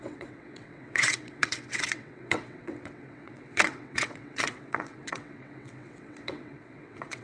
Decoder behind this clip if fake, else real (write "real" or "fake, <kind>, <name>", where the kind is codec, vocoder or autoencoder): fake, vocoder, WaveNeXt